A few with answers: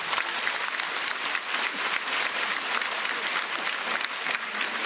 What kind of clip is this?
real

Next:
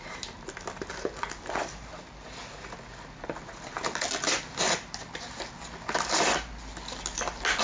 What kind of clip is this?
real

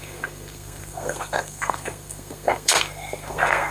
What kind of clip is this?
fake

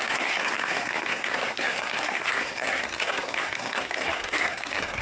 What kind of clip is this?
fake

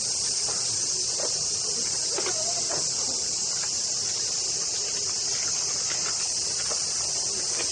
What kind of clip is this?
real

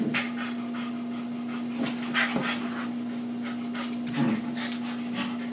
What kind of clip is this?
real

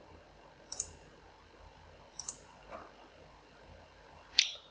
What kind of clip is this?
fake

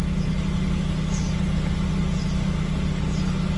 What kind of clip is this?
real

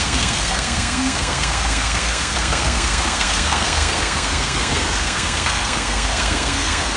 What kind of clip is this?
fake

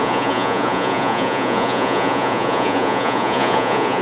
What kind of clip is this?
fake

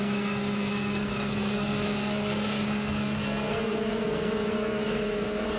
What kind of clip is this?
fake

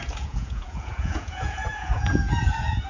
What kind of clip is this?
fake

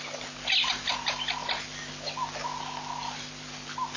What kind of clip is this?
real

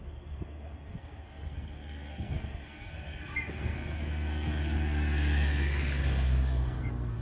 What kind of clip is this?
fake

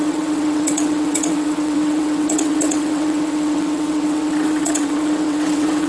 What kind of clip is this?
fake